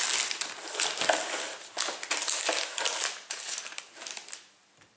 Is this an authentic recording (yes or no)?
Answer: yes